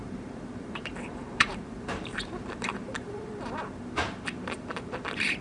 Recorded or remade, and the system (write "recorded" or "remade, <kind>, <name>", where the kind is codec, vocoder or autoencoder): remade, vocoder, BigVGAN v2